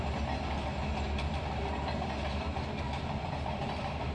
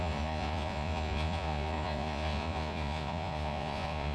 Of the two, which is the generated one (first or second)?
second